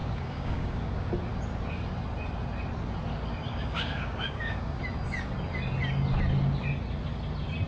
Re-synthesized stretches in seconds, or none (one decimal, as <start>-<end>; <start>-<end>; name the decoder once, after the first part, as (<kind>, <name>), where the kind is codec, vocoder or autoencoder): 0.0-1.1 (codec, DAC); 3.5-4.8

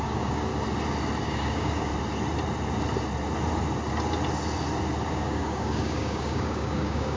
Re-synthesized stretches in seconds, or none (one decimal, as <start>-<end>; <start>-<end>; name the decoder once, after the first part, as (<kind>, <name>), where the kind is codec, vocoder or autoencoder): 0.0-0.5 (codec, DAC); 1.2-1.9; 5.1-7.2

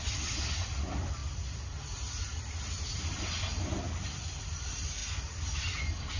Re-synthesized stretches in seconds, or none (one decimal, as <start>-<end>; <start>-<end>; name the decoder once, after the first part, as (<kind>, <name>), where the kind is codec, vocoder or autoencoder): none